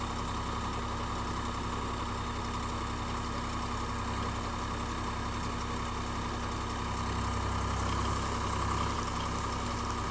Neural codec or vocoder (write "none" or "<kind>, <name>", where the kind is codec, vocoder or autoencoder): none